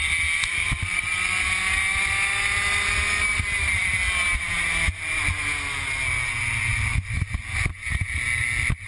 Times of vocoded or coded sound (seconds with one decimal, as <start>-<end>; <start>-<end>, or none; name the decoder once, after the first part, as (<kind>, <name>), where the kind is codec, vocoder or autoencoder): none